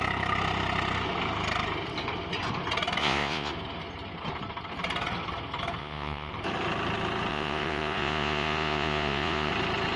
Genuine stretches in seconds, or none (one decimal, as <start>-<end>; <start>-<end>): 0.0-3.0; 3.5-5.8; 6.3-7.3; 9.5-10.0

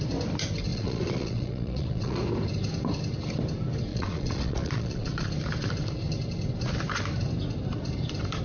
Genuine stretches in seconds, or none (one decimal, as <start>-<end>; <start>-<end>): 0.0-0.7; 2.2-3.9; 5.3-8.4

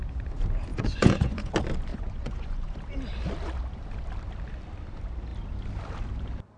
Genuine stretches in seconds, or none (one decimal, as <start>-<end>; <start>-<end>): 0.0-0.7; 1.5-1.9; 2.8-6.6

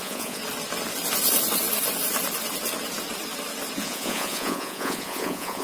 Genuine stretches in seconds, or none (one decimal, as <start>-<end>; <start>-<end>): 0.4-3.8